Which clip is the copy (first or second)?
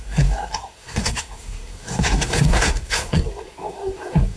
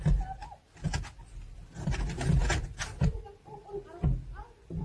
first